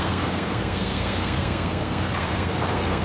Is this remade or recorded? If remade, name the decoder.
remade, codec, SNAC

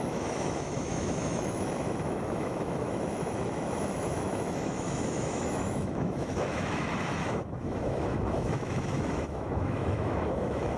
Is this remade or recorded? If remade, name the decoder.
remade, autoencoder, DAC-VAE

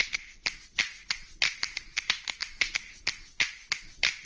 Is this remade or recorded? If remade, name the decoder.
recorded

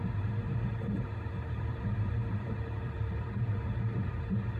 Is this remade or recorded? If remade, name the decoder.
remade, vocoder, BigVGAN v2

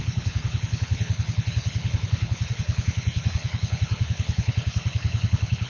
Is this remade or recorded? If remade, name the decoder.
remade, codec, HILCodec